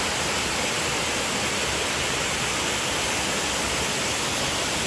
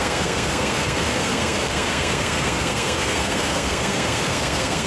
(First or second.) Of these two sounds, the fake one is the second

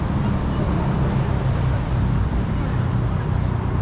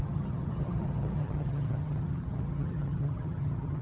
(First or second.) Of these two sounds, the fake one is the second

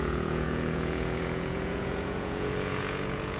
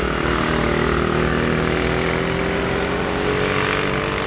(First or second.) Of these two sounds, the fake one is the first